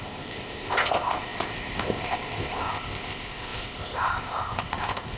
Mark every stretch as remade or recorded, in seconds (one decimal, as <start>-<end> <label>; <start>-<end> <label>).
0.0-5.2 remade